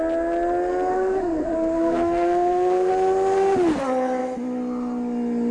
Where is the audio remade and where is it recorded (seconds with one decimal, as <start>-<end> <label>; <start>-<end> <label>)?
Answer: 0.0-0.9 recorded; 0.9-2.9 remade; 2.9-5.5 recorded